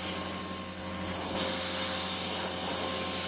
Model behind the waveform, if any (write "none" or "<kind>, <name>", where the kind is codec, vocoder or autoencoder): none